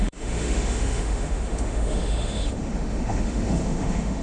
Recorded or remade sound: remade